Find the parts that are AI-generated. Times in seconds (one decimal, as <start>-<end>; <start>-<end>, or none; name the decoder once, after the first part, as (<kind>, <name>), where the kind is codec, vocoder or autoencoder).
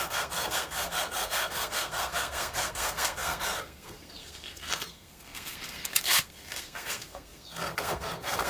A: 0.0-8.5 (codec, SNAC)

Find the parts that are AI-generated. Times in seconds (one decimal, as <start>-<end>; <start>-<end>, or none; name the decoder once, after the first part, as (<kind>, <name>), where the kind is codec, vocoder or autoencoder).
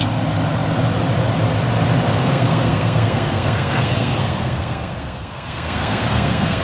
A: 2.2-6.6 (codec, SNAC)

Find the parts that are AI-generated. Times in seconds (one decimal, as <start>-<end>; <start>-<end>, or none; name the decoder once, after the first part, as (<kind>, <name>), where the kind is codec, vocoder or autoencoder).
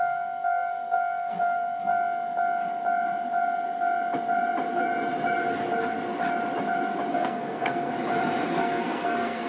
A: 0.0-1.9 (codec, SNAC); 7.1-7.9; 8.6-9.5